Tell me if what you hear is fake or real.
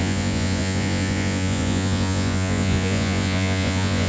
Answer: fake